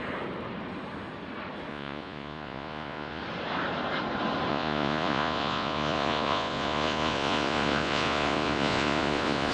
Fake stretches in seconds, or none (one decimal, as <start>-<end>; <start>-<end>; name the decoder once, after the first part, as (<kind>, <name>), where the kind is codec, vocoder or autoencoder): 1.7-3.2 (vocoder, Vocos); 4.5-9.5